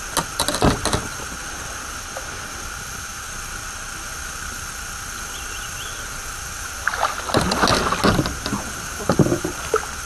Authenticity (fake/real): real